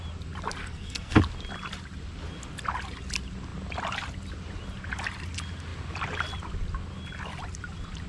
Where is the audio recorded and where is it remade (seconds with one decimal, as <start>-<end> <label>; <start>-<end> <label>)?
0.0-0.6 recorded; 0.6-1.2 remade; 1.2-8.1 recorded